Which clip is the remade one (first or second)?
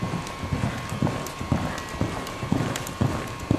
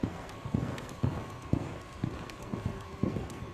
second